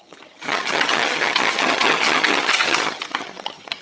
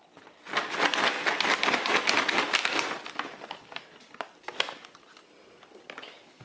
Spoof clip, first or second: first